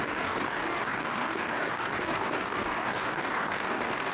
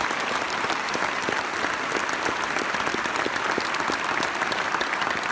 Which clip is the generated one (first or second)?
first